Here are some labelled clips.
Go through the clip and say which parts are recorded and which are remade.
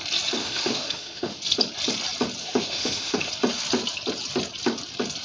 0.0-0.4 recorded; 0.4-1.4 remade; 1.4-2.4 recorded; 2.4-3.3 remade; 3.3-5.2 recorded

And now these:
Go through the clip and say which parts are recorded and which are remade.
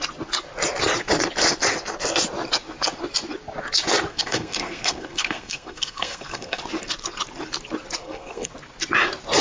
0.0-4.1 recorded; 4.1-6.6 remade; 6.6-8.0 recorded; 8.0-8.5 remade; 8.5-9.4 recorded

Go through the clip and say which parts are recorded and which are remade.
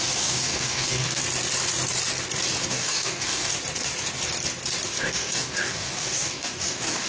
0.0-1.2 remade; 1.2-2.7 recorded; 2.7-3.5 remade; 3.5-5.0 recorded; 5.0-7.1 remade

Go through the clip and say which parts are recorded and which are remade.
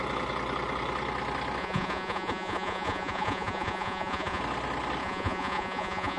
0.0-1.6 recorded; 1.6-4.4 remade; 4.4-5.0 recorded; 5.0-6.2 remade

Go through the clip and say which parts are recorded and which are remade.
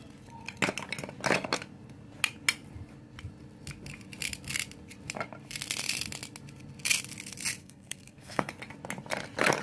0.0-7.6 recorded; 7.6-8.5 remade; 8.5-9.6 recorded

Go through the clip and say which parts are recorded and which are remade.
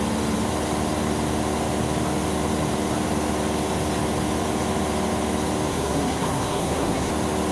0.0-5.7 recorded; 5.7-7.1 remade; 7.1-7.5 recorded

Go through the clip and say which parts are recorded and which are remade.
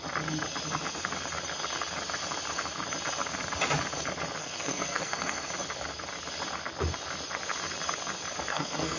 0.0-4.4 recorded; 4.4-5.5 remade; 5.5-8.5 recorded; 8.5-9.0 remade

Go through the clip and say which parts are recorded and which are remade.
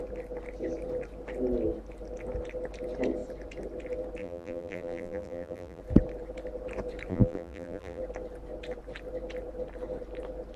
0.0-4.2 recorded; 4.2-5.8 remade; 5.8-7.1 recorded; 7.1-8.0 remade; 8.0-10.6 recorded